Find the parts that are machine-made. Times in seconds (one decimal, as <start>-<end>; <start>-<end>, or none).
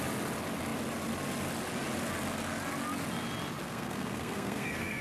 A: 3.6-5.0